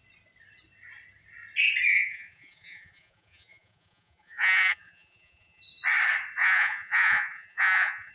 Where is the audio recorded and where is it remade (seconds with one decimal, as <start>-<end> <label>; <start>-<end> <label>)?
0.0-1.9 recorded; 1.9-5.6 remade; 5.6-6.4 recorded; 6.4-8.1 remade